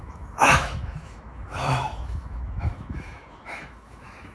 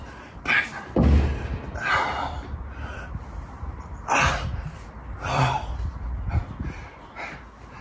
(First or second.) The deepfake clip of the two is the first